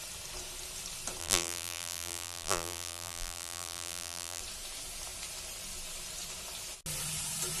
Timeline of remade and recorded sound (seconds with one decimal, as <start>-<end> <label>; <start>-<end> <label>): 0.0-1.2 recorded; 1.2-4.4 remade; 4.4-7.6 recorded